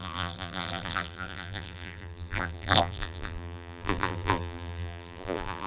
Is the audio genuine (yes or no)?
no